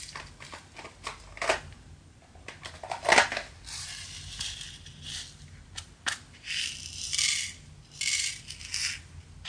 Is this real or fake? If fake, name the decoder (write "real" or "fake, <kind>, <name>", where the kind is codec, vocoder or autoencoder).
real